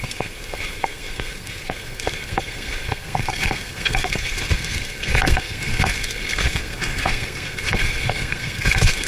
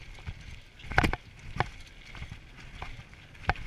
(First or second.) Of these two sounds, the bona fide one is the second